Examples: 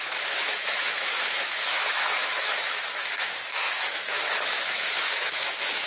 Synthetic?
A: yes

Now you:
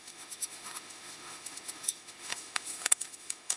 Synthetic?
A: yes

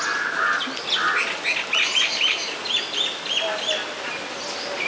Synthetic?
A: no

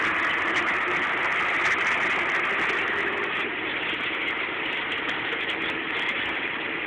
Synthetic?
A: no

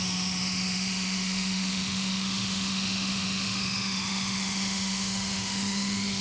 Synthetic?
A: yes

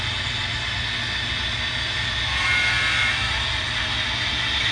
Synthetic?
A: no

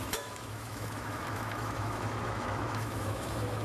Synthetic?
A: yes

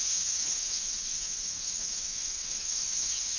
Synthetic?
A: yes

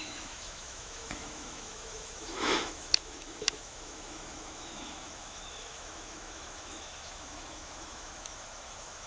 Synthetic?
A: yes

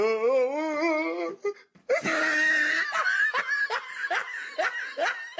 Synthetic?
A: no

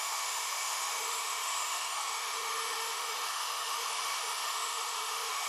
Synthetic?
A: yes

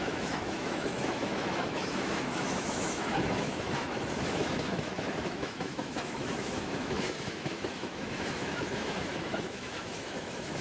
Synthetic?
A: yes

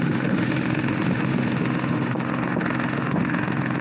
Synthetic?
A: yes